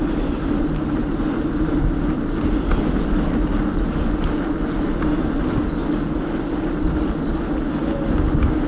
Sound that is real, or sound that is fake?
real